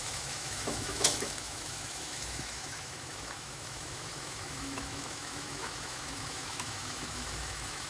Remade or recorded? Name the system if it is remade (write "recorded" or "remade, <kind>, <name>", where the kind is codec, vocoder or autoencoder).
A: remade, autoencoder, DAC-VAE